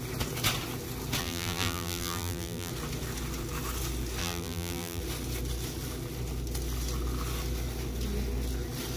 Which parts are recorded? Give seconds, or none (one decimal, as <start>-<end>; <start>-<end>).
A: 0.0-1.2; 2.7-4.2; 5.0-9.0